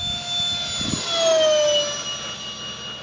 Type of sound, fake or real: real